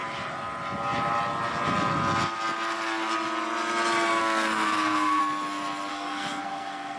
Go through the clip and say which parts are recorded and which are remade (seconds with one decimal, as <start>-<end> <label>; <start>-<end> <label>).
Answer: 0.0-4.2 recorded; 4.2-5.2 remade; 5.2-5.9 recorded; 5.9-7.0 remade